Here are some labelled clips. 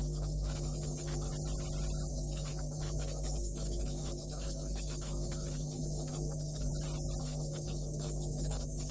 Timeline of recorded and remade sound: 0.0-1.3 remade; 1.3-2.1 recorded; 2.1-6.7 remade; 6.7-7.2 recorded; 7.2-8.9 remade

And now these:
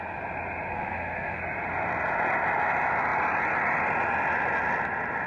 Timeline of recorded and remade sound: 0.0-0.7 recorded; 0.7-1.4 remade; 1.4-5.3 recorded